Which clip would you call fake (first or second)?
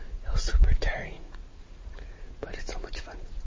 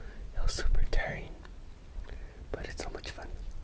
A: first